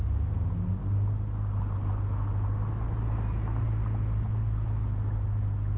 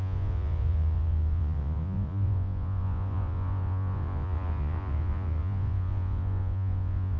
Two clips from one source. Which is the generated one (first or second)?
second